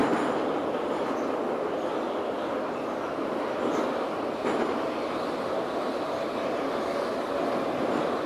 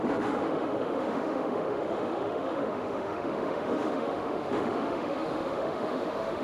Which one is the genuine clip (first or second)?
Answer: first